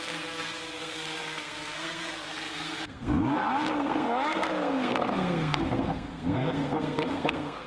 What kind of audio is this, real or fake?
fake